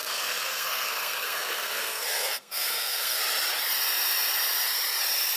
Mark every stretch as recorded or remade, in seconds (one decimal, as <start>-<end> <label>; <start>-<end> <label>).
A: 0.0-3.2 remade; 3.2-5.4 recorded